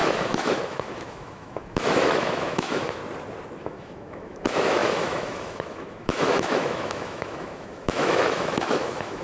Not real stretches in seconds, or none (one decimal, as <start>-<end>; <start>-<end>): 0.0-3.0; 3.6-9.2